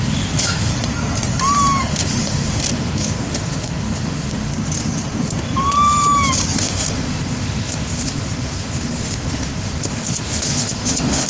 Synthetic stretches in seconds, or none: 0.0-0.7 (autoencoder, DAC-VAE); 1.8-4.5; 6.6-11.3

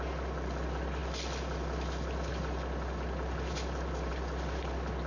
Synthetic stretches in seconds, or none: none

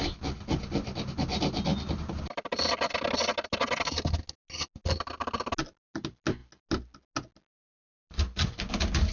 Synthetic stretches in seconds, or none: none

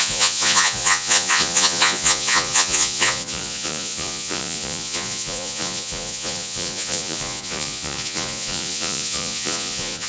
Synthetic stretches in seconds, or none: 0.0-10.1 (vocoder, Vocos)